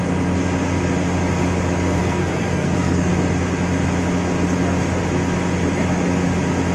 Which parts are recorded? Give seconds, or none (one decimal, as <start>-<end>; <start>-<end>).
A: 0.0-2.0; 3.1-6.7